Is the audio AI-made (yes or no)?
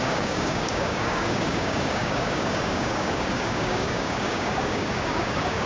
yes